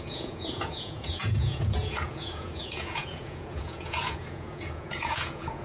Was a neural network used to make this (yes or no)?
yes